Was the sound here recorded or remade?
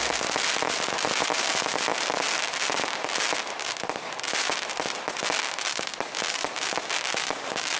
recorded